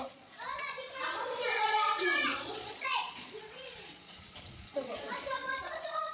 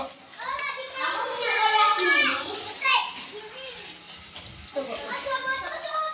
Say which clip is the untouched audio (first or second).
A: second